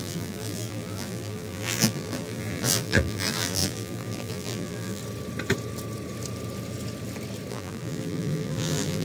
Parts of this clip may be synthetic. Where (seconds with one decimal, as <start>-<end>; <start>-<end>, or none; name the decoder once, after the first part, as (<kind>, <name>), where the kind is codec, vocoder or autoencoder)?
0.0-5.0 (vocoder, BigVGAN v2); 7.5-9.0